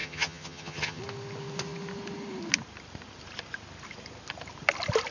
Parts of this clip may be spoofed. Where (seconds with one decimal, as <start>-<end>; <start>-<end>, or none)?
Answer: 0.0-1.0